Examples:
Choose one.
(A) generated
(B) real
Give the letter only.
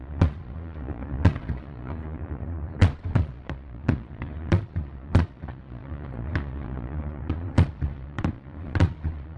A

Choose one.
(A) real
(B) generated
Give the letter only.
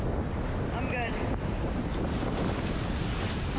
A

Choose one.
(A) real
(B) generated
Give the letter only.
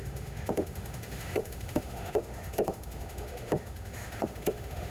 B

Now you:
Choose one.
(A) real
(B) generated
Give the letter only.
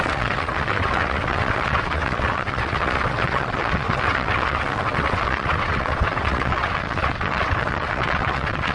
B